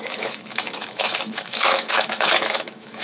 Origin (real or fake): fake